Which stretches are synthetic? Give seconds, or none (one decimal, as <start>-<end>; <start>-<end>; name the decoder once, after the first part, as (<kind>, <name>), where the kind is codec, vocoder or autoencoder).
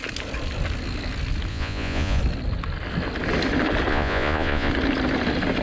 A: 1.5-2.2 (vocoder, Vocos); 3.9-4.7